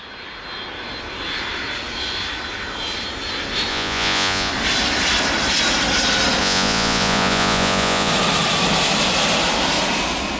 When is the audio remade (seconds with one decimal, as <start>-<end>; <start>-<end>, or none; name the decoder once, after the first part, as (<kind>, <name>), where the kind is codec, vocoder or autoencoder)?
3.7-4.5 (vocoder, Vocos); 6.4-8.1